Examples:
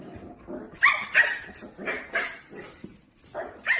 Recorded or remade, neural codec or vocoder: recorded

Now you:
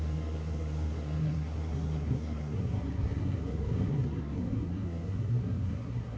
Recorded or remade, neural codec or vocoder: remade, codec, SNAC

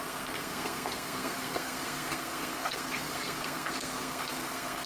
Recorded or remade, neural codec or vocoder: remade, codec, SNAC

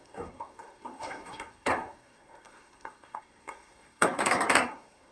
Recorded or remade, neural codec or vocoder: remade, codec, SNAC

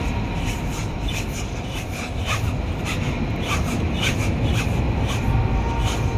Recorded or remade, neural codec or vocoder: recorded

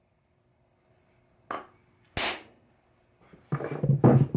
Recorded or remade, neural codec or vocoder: recorded